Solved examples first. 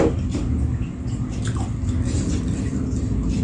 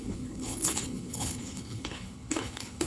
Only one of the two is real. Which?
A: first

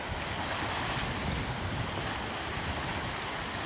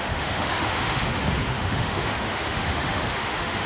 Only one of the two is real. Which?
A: first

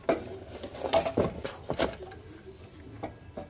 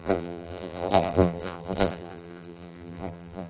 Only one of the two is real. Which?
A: first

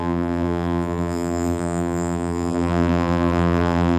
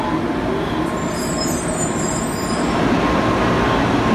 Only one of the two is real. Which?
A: second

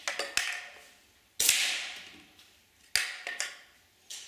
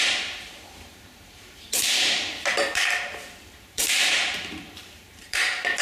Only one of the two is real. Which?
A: first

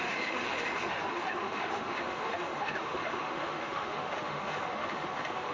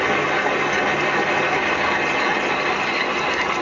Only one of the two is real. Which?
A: second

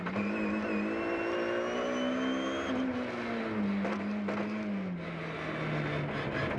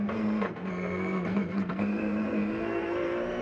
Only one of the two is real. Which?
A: first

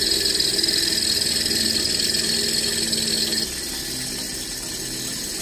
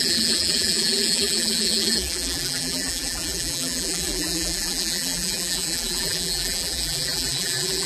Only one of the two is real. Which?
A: first